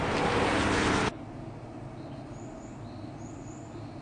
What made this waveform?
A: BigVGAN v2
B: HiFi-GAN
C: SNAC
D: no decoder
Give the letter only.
D